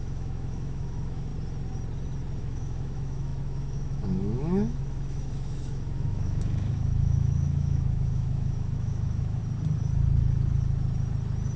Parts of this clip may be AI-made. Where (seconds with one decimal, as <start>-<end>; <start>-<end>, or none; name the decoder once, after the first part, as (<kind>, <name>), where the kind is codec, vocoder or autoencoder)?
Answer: 0.0-1.3 (autoencoder, DAC-VAE); 2.4-9.4